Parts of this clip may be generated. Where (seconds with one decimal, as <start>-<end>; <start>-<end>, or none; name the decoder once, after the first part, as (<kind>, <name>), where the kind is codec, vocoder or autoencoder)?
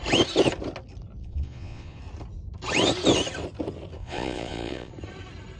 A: 1.2-2.0 (vocoder, Vocos); 4.0-4.9